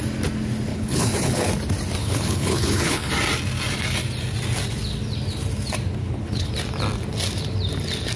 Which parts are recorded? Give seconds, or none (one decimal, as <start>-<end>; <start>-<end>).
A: 0.0-0.7; 1.5-2.0; 3.1-6.0; 6.5-8.2